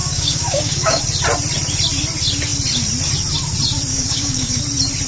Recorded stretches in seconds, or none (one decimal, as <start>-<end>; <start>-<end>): 1.0-3.9; 4.6-5.1